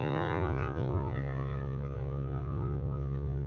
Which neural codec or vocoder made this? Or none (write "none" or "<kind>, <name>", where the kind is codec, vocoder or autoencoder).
vocoder, Vocos